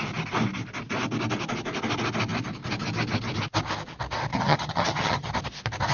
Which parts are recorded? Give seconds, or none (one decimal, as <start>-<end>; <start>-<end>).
0.0-4.3; 5.3-5.9